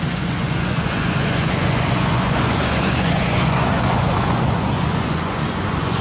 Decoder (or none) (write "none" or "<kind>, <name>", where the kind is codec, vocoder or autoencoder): vocoder, Vocos